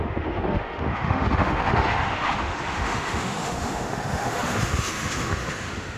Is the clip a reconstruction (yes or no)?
yes